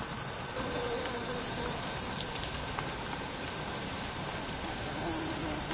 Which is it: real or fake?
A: real